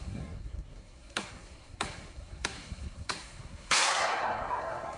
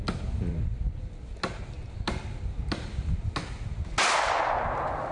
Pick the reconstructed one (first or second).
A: first